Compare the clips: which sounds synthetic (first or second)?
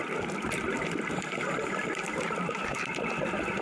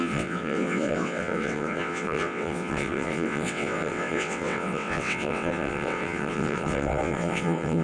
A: second